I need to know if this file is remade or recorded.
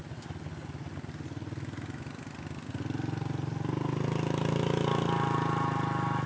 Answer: recorded